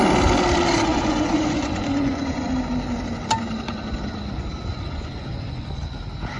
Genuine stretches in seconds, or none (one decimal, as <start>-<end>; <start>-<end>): 0.0-0.9; 2.5-4.7; 5.8-6.4